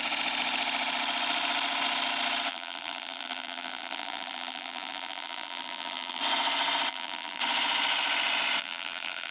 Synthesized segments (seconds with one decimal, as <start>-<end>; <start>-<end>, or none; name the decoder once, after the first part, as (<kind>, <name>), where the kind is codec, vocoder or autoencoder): 2.5-6.2 (vocoder, BigVGAN v2); 6.9-7.4; 8.6-9.3